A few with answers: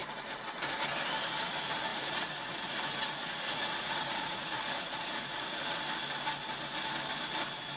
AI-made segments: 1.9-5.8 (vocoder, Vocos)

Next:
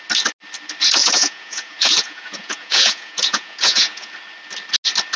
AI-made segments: 1.0-4.1 (vocoder, Vocos)

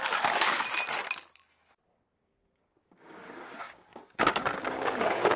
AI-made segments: 0.0-0.5 (codec, DAC); 1.9-5.4

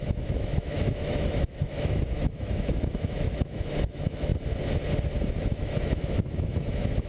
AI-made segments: 0.0-4.3 (autoencoder, DAC-VAE); 5.4-7.1